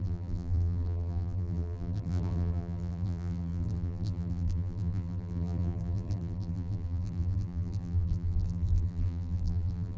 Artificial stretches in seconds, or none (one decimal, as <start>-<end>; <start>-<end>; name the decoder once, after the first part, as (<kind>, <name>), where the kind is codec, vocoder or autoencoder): 0.0-10.0 (vocoder, BigVGAN v2)